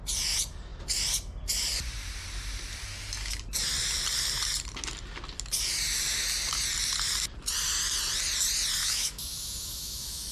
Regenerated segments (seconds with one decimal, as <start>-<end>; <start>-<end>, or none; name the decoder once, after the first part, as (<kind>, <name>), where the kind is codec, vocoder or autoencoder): 8.8-10.3 (autoencoder, DAC-VAE)